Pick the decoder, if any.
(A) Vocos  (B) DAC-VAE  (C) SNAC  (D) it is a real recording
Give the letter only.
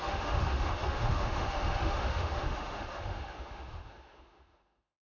B